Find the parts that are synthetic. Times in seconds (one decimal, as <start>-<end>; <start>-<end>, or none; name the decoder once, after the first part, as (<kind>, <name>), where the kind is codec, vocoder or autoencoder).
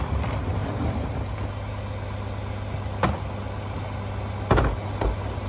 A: none